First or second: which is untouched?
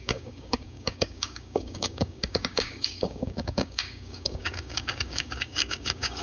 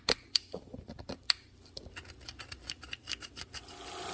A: second